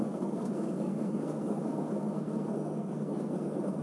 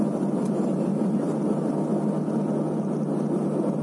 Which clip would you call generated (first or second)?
first